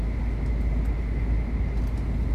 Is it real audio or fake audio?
real